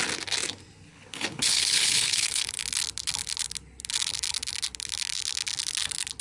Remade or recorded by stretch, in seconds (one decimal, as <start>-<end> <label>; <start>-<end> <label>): 0.0-0.9 recorded; 0.9-2.6 remade; 2.6-6.2 recorded